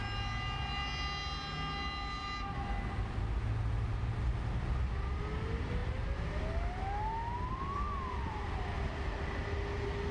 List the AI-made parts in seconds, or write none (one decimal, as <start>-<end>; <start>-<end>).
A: none